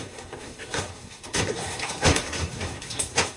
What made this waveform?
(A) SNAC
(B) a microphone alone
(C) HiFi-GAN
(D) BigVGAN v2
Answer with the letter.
A